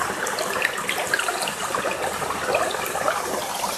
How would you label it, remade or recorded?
recorded